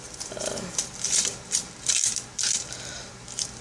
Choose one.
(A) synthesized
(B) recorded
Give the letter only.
B